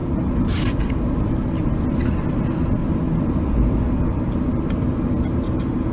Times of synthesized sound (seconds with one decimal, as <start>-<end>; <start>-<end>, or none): 2.8-4.8